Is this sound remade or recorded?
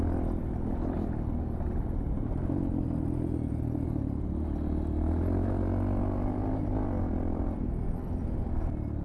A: recorded